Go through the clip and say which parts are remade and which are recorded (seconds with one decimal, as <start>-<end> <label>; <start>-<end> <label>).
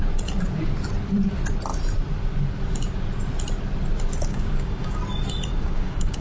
0.0-4.3 recorded; 4.3-5.0 remade; 5.0-5.5 recorded; 5.5-6.2 remade